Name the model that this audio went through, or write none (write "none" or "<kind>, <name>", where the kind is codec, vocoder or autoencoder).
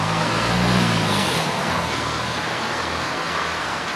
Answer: codec, SNAC